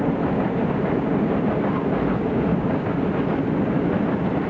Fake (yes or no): no